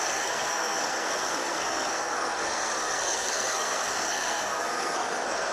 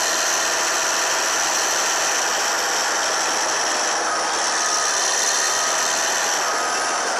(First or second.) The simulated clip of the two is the first